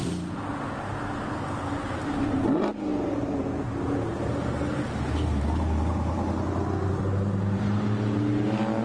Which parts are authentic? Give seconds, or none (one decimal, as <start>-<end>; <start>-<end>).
0.0-8.8